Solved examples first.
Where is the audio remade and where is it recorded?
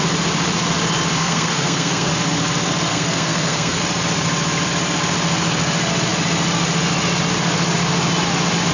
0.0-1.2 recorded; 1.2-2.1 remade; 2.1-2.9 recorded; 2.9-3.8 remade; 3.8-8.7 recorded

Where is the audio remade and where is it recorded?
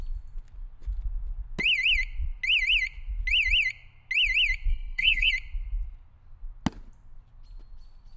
0.0-4.7 recorded; 4.7-5.3 remade; 5.3-8.2 recorded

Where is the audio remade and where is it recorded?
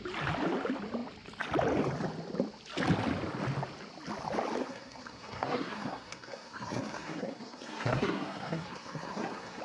0.0-4.6 recorded; 4.6-9.6 remade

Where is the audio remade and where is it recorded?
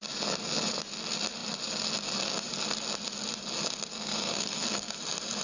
0.0-3.9 recorded; 3.9-4.9 remade; 4.9-5.4 recorded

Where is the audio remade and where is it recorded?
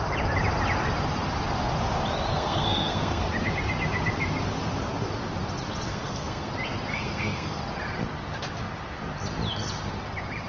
0.0-2.3 recorded; 2.3-3.3 remade; 3.3-5.9 recorded; 5.9-6.5 remade; 6.5-6.9 recorded; 6.9-7.6 remade; 7.6-10.5 recorded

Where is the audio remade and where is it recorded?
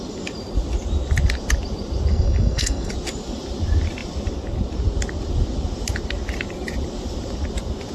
0.0-2.1 recorded; 2.1-2.9 remade; 2.9-7.9 recorded